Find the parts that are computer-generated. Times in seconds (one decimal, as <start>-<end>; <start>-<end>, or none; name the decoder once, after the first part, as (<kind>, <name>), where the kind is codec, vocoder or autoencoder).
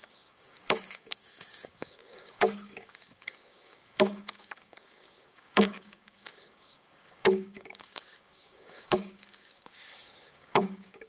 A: 0.0-11.1 (codec, DAC)